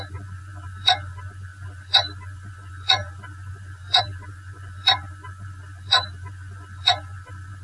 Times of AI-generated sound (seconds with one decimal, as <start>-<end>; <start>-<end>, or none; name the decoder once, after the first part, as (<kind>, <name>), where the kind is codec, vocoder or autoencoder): 0.0-7.6 (vocoder, Vocos)